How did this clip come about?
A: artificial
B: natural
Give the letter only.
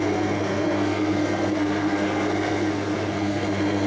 A